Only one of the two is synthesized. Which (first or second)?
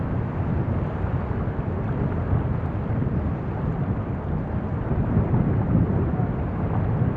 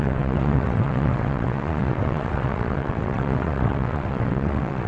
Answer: second